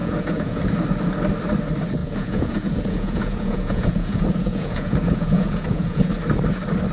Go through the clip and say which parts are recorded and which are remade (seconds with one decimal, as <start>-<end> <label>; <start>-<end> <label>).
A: 0.0-0.6 remade; 0.6-2.0 recorded; 2.0-6.1 remade; 6.1-6.9 recorded